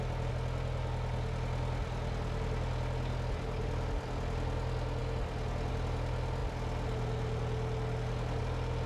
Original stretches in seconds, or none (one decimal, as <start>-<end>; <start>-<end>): 0.0-8.9